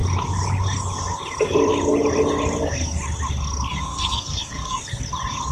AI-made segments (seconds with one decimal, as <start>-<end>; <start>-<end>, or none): 3.7-4.8